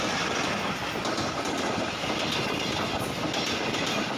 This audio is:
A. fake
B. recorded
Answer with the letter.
B